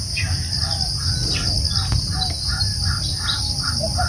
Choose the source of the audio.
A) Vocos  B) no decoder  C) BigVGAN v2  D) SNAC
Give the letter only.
B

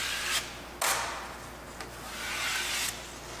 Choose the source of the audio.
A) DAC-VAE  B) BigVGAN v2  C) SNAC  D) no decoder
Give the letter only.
D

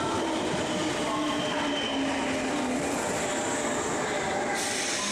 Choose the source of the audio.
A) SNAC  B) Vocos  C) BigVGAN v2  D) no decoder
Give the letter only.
D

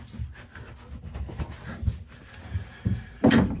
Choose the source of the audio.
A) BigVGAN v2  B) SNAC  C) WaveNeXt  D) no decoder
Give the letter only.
D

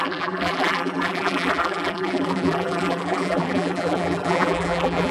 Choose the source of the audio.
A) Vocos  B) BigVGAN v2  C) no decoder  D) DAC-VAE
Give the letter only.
B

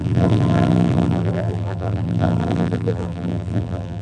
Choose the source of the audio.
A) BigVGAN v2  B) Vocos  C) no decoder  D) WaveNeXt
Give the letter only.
A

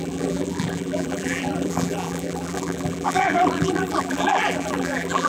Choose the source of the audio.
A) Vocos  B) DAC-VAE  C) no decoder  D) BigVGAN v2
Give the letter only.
D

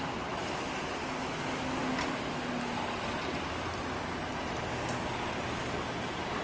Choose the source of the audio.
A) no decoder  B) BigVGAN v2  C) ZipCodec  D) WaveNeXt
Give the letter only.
A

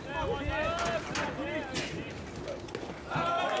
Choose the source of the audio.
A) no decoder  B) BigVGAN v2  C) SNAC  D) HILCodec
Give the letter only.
A